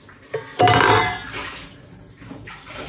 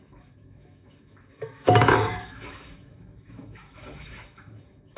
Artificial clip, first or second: second